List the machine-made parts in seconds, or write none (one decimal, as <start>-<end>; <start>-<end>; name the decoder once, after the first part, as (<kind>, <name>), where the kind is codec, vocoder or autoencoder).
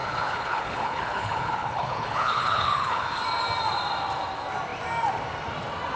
0.0-3.2 (codec, HILCodec)